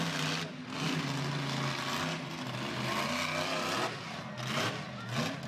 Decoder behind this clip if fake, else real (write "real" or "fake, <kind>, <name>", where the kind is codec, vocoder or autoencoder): real